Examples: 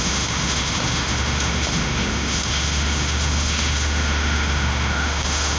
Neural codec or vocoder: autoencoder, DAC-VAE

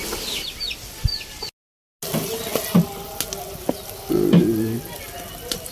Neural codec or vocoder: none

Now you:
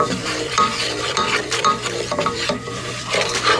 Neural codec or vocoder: vocoder, BigVGAN v2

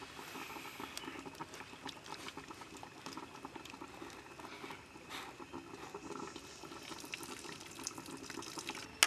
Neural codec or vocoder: none